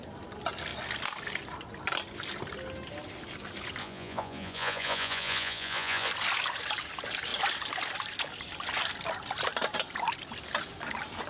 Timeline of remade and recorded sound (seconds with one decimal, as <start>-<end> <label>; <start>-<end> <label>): 0.0-3.8 recorded; 3.8-6.1 remade; 6.1-11.3 recorded